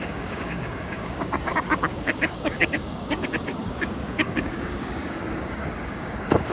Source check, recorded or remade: remade